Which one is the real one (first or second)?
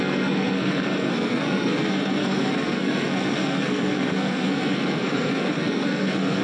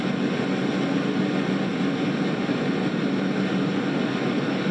second